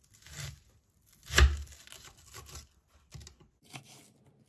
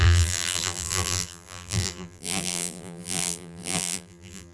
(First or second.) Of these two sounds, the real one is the first